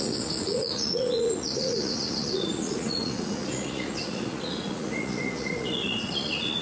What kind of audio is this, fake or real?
fake